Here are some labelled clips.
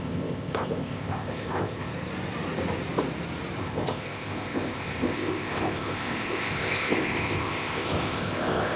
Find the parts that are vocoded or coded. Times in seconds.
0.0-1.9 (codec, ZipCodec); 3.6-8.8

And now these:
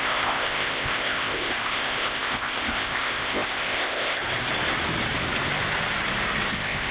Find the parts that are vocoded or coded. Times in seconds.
0.0-4.2 (codec, ZipCodec); 6.5-6.9

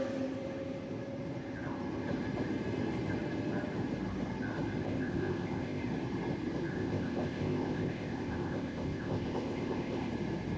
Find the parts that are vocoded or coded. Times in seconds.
4.8-5.8 (codec, ZipCodec); 6.7-10.1